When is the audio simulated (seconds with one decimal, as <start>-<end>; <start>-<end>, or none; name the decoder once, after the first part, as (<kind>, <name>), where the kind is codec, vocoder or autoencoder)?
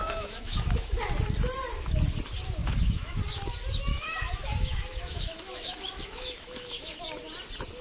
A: 0.0-1.0 (autoencoder, DAC-VAE); 2.6-3.2; 3.9-7.0